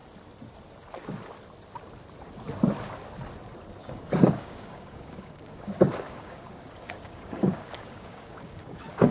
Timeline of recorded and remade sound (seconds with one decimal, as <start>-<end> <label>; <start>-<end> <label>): 0.0-3.8 recorded; 3.8-9.1 remade